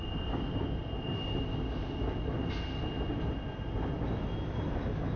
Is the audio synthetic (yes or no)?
no